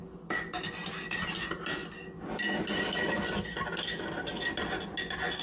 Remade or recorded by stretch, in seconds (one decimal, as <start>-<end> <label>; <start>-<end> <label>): 0.0-5.4 recorded

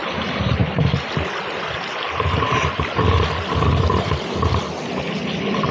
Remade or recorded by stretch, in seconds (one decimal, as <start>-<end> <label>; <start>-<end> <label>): 0.0-5.7 recorded

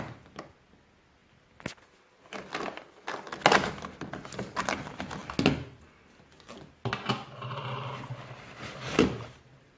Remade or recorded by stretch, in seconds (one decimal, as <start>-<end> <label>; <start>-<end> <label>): 0.0-9.8 recorded

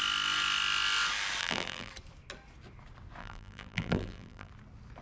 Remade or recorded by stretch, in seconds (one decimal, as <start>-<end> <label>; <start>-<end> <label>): 0.0-1.4 recorded; 1.4-1.9 remade; 1.9-3.2 recorded; 3.2-4.5 remade; 4.5-5.0 recorded

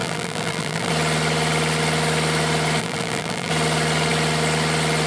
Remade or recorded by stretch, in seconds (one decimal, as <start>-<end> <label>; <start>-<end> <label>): 0.0-0.9 remade; 0.9-2.8 recorded; 2.8-3.5 remade; 3.5-5.1 recorded

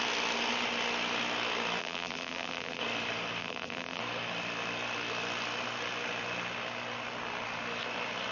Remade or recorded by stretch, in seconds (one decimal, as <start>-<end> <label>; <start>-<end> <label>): 0.0-1.8 recorded; 1.8-2.8 remade; 2.8-3.4 recorded; 3.4-4.0 remade; 4.0-8.3 recorded